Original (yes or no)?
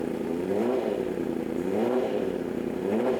no